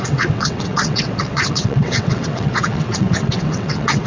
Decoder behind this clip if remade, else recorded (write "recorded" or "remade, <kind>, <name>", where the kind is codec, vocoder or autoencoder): remade, vocoder, WaveNeXt